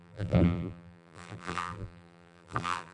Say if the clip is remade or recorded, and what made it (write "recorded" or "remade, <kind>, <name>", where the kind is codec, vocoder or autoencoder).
remade, vocoder, BigVGAN v2